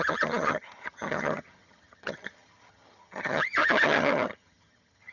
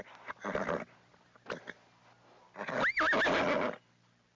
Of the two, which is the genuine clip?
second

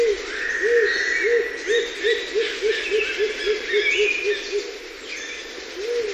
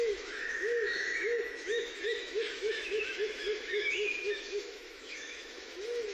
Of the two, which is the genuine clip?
first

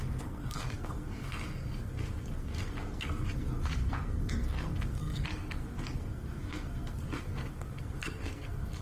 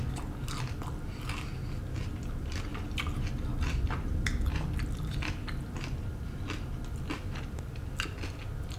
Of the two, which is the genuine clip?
second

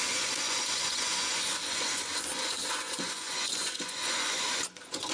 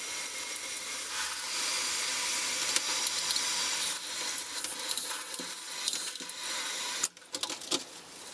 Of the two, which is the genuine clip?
second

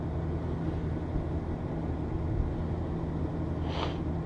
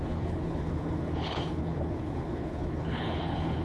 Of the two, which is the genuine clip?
first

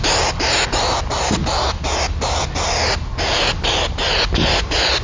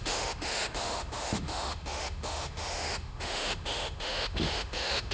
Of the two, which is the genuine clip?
first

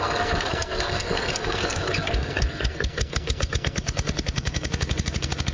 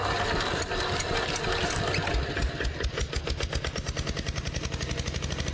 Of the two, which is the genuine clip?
second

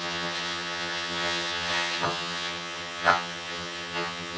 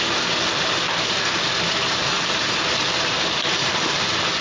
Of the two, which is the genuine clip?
second